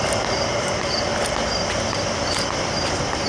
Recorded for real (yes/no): yes